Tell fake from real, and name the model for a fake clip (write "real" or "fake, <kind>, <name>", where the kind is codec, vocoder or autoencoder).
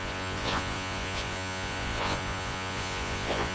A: fake, vocoder, Vocos